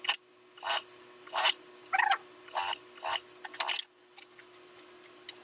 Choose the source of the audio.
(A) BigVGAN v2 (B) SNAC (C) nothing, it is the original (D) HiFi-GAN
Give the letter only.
C